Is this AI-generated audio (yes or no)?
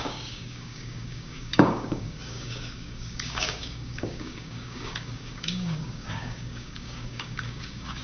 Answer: yes